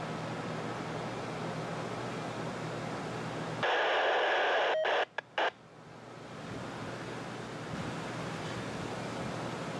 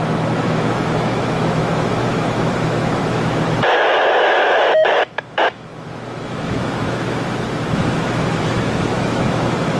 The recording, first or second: first